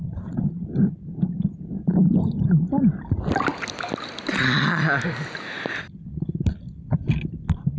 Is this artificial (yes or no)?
no